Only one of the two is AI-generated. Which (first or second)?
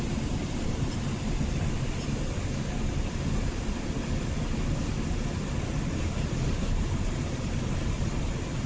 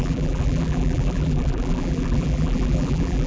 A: second